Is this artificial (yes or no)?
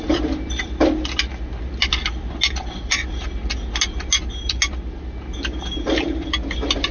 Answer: no